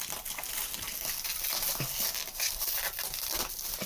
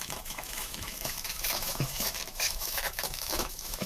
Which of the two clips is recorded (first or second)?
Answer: first